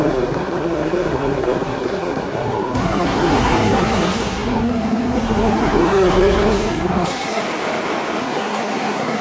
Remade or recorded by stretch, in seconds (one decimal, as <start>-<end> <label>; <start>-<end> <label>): 0.0-7.4 remade; 7.4-8.2 recorded; 8.2-9.2 remade